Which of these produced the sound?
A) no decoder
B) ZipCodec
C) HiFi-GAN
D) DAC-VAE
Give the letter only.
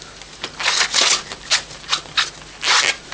A